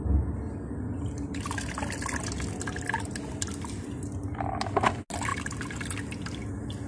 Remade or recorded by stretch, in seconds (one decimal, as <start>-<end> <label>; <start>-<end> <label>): 0.0-6.9 recorded